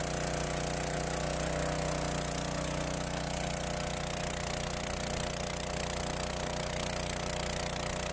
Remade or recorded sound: recorded